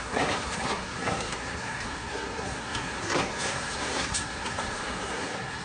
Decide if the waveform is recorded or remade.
remade